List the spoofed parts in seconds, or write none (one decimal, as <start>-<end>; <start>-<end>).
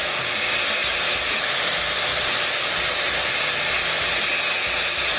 0.8-1.4; 2.1-3.3